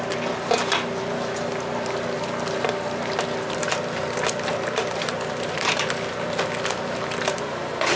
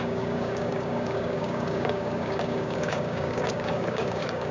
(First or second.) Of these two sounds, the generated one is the second